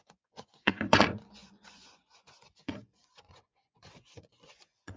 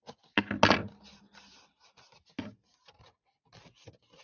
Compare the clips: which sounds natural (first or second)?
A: second